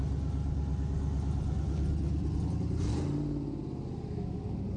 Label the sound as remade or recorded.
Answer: recorded